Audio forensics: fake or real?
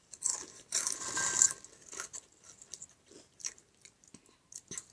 real